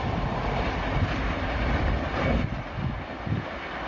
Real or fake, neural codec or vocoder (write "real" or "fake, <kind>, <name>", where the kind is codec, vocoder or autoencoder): real